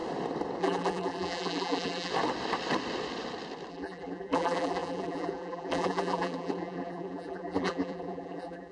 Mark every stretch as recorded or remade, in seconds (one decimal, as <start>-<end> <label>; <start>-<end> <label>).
0.0-0.6 recorded; 0.6-2.1 remade; 2.1-3.7 recorded; 3.7-8.7 remade